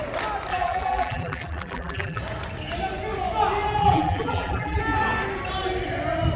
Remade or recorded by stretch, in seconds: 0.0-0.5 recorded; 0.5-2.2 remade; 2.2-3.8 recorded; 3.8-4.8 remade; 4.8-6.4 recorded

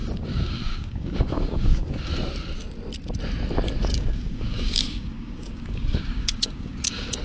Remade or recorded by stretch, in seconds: 0.0-2.1 remade; 2.1-3.9 recorded; 3.9-7.2 remade

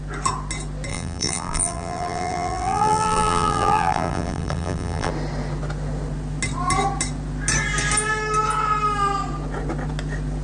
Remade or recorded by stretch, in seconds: 0.0-0.9 recorded; 0.9-5.1 remade; 5.1-10.4 recorded

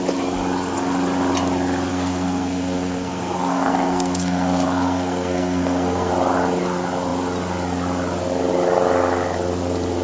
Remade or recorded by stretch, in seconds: 0.0-1.9 recorded; 1.9-6.1 remade; 6.1-10.0 recorded

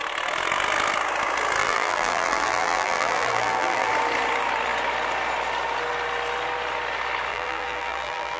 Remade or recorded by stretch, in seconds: 0.0-1.6 recorded; 1.6-3.9 remade; 3.9-7.3 recorded; 7.3-8.4 remade

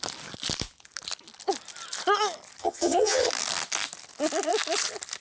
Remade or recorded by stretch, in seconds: 0.0-2.6 recorded; 2.6-3.3 remade; 3.3-5.2 recorded